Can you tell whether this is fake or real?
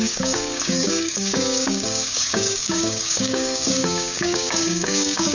fake